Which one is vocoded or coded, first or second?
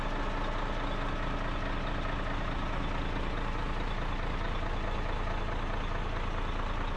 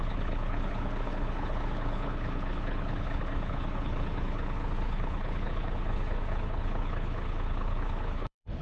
second